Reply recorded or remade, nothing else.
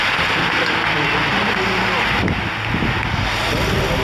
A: recorded